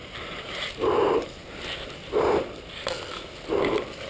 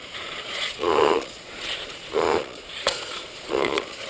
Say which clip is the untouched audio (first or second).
first